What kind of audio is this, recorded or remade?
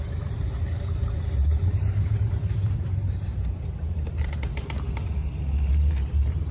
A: remade